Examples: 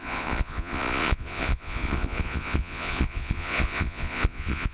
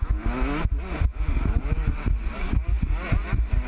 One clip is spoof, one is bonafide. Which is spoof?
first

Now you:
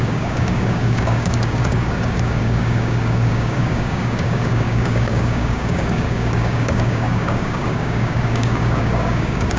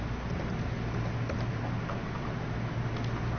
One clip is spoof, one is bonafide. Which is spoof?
first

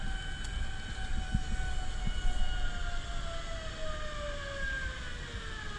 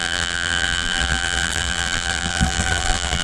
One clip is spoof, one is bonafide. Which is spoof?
second